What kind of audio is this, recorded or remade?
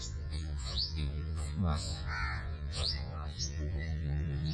remade